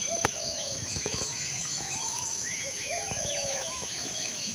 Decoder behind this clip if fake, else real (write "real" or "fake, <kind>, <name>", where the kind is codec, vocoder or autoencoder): fake, autoencoder, DAC-VAE